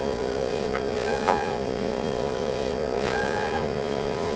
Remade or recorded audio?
remade